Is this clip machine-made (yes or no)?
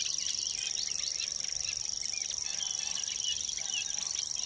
no